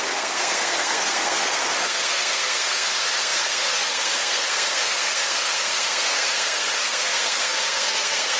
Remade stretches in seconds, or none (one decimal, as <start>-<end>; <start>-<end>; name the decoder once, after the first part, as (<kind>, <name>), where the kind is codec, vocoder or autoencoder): 0.0-8.4 (codec, SNAC)